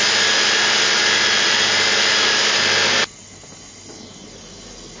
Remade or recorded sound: recorded